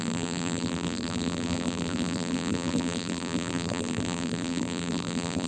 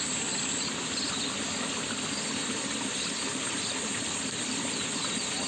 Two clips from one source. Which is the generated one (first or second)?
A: first